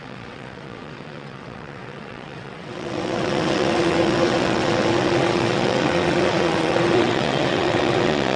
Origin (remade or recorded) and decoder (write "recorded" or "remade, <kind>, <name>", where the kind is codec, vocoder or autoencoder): remade, vocoder, WaveNeXt